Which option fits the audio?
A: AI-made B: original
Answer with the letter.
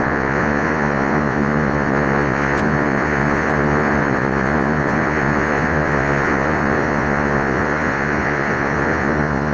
A